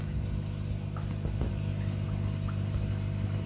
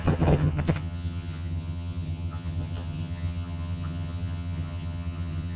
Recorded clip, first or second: first